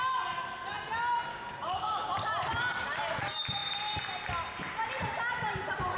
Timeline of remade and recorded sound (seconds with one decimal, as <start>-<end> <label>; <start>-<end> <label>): 0.0-1.3 recorded; 1.3-2.1 remade; 2.1-6.0 recorded